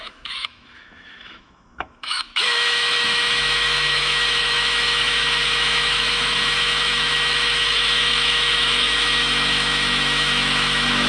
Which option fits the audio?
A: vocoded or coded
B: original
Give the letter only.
A